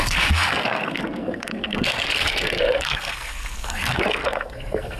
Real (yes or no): no